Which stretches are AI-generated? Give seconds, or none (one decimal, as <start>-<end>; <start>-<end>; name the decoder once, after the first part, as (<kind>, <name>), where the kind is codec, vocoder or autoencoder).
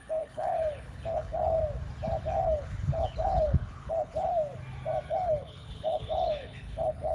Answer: 0.0-1.6 (codec, HILCodec); 2.2-4.3; 5.1-7.1